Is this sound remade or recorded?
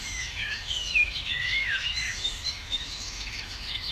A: remade